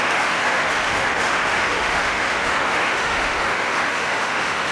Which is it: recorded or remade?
remade